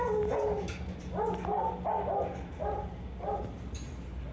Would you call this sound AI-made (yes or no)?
no